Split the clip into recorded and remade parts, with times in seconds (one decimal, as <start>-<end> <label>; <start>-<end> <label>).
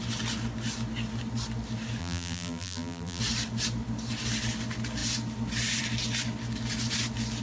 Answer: 0.0-2.0 recorded; 2.0-3.2 remade; 3.2-7.4 recorded